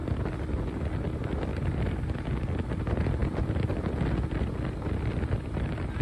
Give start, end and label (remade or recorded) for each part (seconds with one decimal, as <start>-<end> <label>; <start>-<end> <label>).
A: 0.0-6.0 recorded